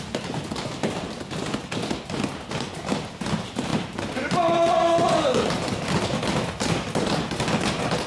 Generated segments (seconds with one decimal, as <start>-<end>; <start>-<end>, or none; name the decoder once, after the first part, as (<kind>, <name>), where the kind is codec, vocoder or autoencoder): none